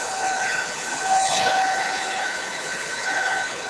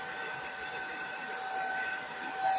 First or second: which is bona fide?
second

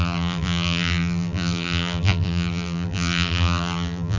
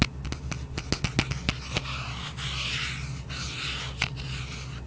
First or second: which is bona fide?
second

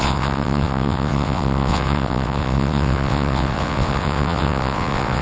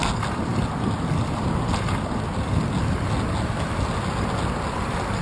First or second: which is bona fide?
second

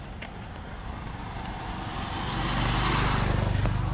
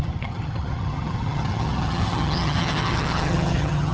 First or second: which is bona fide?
first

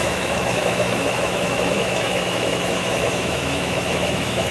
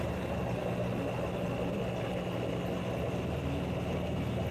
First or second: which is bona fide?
second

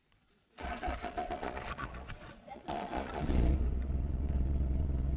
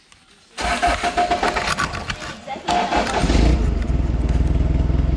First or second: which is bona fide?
second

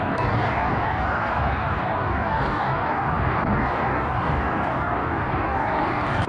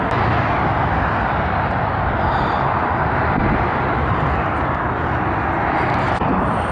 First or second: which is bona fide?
second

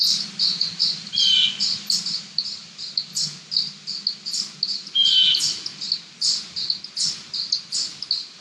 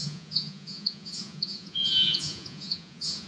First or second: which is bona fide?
first